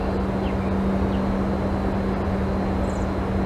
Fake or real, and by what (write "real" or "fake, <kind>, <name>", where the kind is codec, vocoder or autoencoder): real